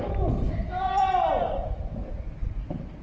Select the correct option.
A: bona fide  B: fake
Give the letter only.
A